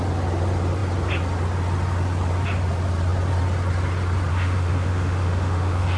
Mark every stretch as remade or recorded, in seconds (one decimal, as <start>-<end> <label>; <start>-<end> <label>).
0.0-4.3 recorded; 4.3-6.0 remade